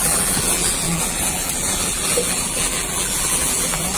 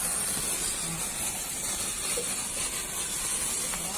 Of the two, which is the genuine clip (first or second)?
second